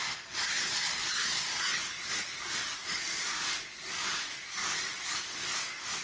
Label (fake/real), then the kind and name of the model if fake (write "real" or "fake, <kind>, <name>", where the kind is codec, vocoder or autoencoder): fake, codec, DAC